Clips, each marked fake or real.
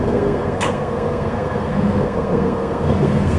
fake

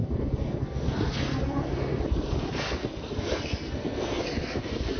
fake